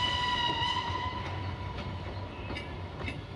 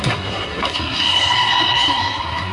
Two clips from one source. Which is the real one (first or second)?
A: first